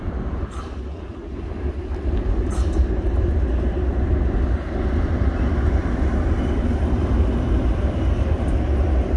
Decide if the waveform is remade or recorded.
recorded